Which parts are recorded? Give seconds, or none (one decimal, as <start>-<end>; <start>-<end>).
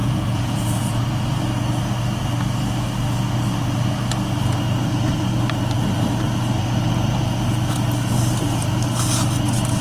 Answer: 1.0-9.8